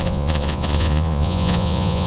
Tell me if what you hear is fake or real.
fake